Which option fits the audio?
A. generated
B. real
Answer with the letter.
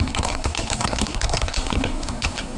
A